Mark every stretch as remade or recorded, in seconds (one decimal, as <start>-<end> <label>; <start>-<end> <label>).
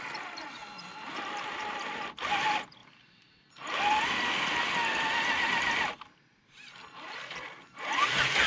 0.0-0.6 remade; 0.6-2.3 recorded; 2.3-4.8 remade; 4.8-5.5 recorded; 5.5-8.5 remade